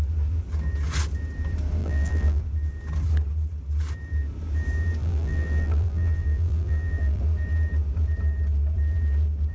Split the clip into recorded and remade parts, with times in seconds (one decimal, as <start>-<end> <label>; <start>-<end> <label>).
0.0-1.8 recorded; 1.8-2.4 remade; 2.4-5.0 recorded; 5.0-7.2 remade; 7.2-9.5 recorded